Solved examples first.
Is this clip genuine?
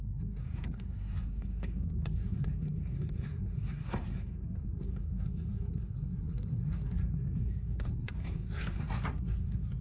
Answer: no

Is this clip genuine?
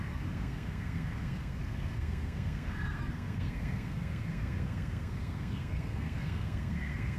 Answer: no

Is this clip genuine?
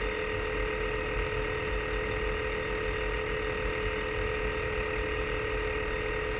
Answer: yes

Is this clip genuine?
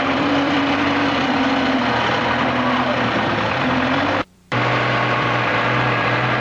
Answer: no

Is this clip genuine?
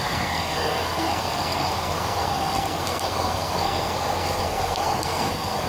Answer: no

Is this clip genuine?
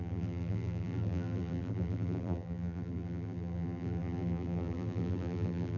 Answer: no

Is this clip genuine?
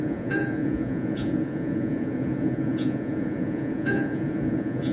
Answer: no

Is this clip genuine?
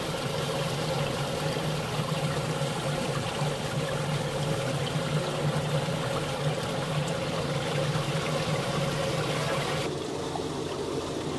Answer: yes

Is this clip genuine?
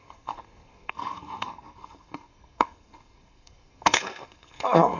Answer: no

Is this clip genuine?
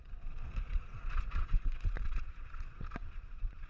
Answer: no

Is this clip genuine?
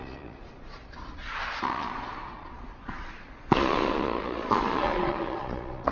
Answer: no